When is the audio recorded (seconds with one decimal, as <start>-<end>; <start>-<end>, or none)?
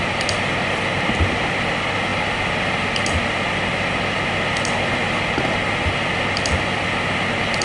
0.0-7.6